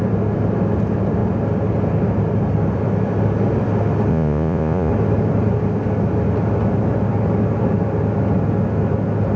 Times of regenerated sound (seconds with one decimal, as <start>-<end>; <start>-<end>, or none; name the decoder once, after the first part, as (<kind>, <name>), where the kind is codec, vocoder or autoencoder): 4.1-4.9 (vocoder, Vocos)